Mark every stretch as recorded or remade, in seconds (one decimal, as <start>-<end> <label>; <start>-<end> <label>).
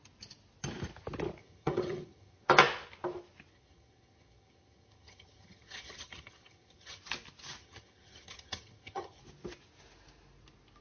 0.0-1.4 recorded; 1.4-2.5 remade; 2.5-3.5 recorded; 3.5-7.0 remade; 7.0-7.6 recorded; 7.6-9.2 remade; 9.2-10.8 recorded